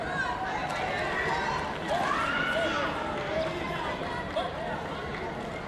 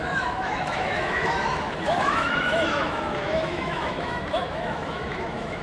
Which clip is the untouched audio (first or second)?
first